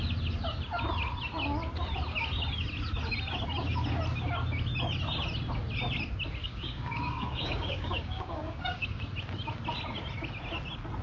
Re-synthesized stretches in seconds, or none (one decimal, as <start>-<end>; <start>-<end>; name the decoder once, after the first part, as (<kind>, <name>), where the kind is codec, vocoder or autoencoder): 6.4-9.0 (codec, DAC)